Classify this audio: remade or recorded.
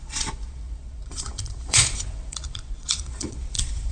remade